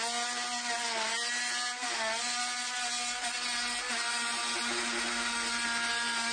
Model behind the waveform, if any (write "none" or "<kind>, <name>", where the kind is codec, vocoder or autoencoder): none